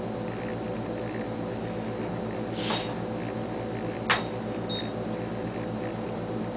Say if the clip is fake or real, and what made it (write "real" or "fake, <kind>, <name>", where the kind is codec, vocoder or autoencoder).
real